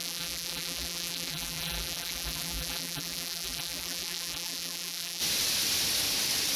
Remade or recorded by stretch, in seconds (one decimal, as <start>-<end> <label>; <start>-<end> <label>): 0.0-5.2 remade; 5.2-6.6 recorded